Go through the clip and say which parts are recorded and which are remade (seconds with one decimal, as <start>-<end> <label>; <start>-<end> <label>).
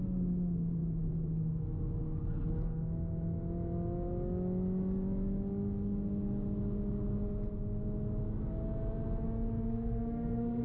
0.0-9.7 recorded; 9.7-10.6 remade